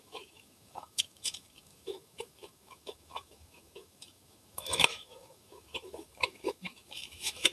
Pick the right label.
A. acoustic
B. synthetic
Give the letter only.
B